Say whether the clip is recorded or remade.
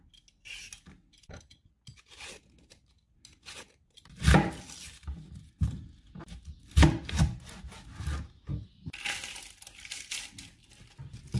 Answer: recorded